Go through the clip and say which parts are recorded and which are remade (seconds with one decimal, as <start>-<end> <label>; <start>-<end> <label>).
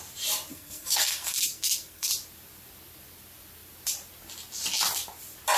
0.0-0.5 recorded; 0.5-2.1 remade; 2.1-5.6 recorded